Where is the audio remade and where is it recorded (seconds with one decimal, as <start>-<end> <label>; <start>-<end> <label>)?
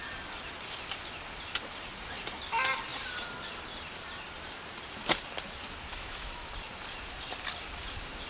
0.0-5.9 recorded; 5.9-6.5 remade; 6.5-8.3 recorded